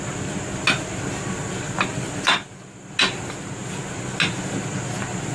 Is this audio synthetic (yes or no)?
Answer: no